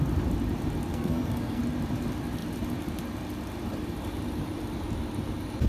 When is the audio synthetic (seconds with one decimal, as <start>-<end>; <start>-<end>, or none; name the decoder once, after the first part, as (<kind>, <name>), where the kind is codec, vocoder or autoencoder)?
0.9-1.6 (codec, SNAC)